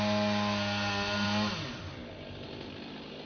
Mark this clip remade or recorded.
recorded